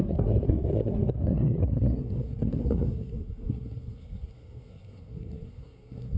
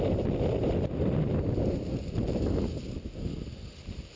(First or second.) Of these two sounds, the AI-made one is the first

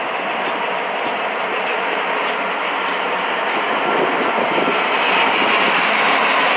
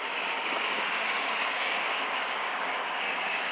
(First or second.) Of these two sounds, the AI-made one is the second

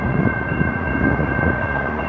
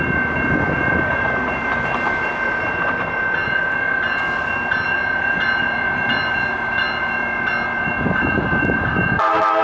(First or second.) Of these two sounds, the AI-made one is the first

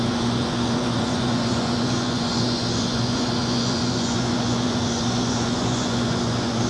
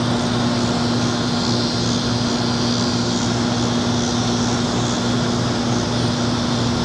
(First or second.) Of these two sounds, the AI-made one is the first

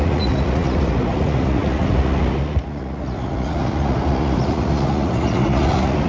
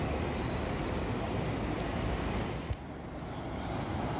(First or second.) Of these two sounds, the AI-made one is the first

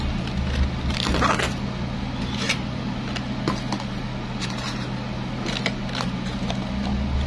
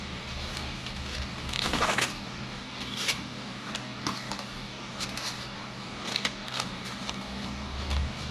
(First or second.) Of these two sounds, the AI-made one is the second